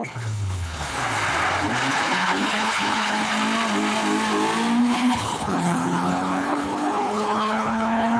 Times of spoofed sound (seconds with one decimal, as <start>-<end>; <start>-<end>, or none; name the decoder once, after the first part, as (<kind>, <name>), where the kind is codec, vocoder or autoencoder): 0.0-1.0 (codec, HILCodec); 1.9-3.3; 4.8-8.2